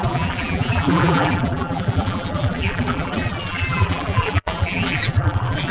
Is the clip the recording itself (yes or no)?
no